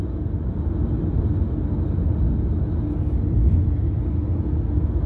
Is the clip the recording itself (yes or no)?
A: yes